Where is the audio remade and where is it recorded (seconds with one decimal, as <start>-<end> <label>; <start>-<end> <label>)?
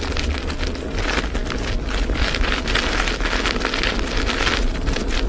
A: 0.0-5.3 recorded